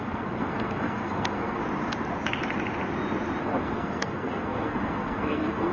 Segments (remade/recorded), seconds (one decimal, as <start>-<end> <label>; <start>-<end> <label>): 0.0-1.6 remade; 1.6-3.4 recorded; 3.4-5.7 remade